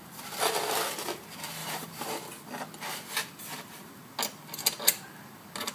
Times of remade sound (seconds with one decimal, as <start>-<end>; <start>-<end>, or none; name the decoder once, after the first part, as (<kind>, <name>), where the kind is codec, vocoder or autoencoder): 1.6-2.1 (vocoder, BigVGAN v2)